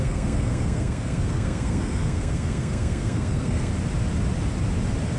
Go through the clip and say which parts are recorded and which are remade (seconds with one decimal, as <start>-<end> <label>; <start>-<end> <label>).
0.0-3.7 remade; 3.7-5.2 recorded